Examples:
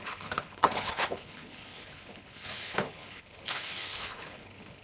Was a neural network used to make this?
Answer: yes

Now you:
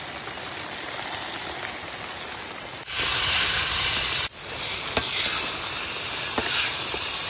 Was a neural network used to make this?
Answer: no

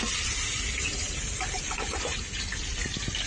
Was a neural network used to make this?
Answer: no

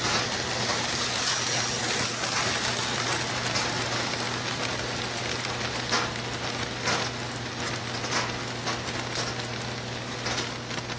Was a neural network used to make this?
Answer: no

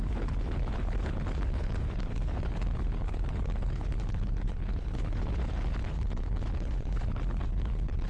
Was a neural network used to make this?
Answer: yes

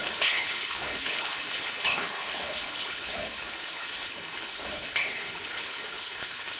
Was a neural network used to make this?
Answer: yes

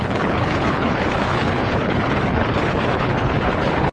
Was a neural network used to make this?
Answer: yes